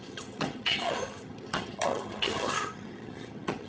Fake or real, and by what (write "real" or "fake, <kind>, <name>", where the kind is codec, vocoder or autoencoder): fake, vocoder, HiFi-GAN